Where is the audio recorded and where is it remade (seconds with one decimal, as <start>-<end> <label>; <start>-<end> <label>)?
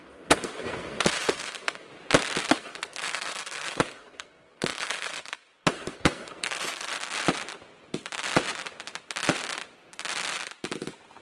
0.0-1.9 remade; 1.9-2.5 recorded; 2.5-6.9 remade; 6.9-11.2 recorded